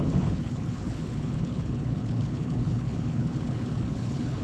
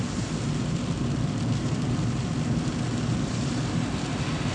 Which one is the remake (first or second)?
first